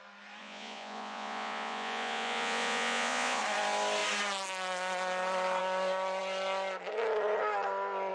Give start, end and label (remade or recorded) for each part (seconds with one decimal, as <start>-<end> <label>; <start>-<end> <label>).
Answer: 0.0-0.4 recorded; 0.4-3.4 remade; 3.4-8.1 recorded